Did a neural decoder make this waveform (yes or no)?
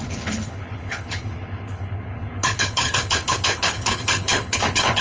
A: yes